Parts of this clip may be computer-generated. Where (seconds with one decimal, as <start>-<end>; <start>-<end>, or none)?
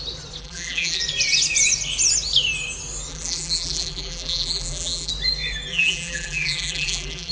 0.4-1.0; 3.1-5.1; 5.7-7.3